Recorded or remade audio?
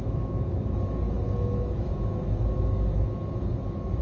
remade